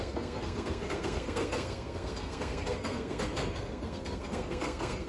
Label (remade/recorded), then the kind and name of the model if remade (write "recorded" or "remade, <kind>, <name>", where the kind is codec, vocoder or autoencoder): remade, codec, SNAC